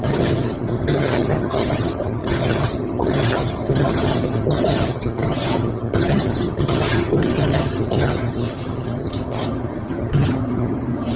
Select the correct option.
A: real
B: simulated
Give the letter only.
B